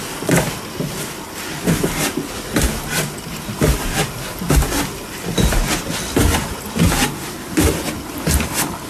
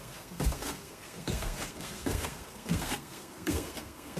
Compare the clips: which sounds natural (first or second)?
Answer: first